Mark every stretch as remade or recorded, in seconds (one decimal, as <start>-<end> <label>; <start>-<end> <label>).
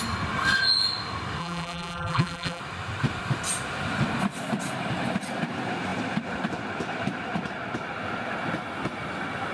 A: 0.0-1.4 recorded; 1.4-2.6 remade; 2.6-9.5 recorded